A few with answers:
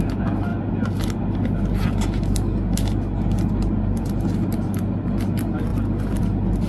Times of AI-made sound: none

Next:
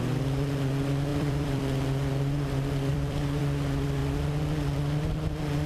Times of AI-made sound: 1.1-1.6 (vocoder, BigVGAN v2); 2.9-3.4

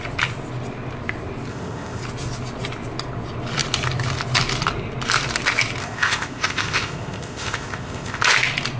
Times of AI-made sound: 1.5-2.0 (codec, ZipCodec); 5.8-8.2

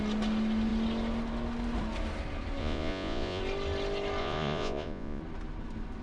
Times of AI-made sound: 2.6-3.4 (vocoder, Vocos); 4.2-5.2

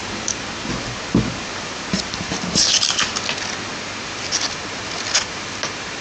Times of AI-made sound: none

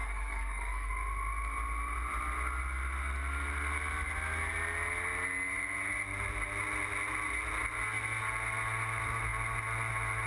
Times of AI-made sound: 0.0-0.9 (codec, DAC)

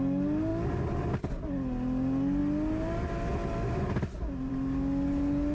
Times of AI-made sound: none